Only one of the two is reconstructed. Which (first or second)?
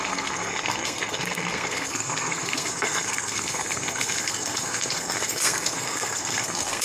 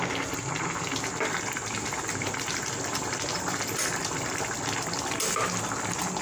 first